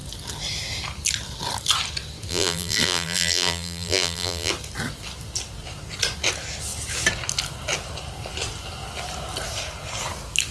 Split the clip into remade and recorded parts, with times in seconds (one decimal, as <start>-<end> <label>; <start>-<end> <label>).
0.0-2.3 recorded; 2.3-4.5 remade; 4.5-10.5 recorded